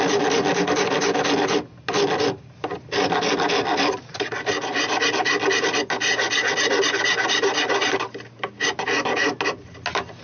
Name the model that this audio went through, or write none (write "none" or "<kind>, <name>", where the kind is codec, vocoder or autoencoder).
none